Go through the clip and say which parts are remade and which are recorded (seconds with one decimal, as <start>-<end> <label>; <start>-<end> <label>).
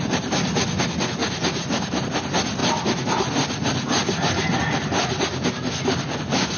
0.0-6.6 recorded